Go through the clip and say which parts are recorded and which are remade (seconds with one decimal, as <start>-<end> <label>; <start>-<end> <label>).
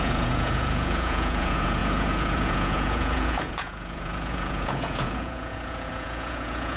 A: 0.0-6.8 remade